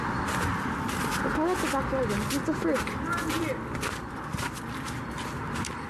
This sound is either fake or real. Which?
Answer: real